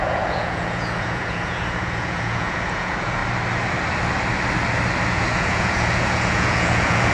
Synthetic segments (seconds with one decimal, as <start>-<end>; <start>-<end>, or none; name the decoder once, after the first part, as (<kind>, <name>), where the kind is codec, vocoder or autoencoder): 0.0-3.2 (vocoder, Vocos); 5.1-7.1